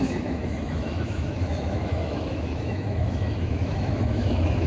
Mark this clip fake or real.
fake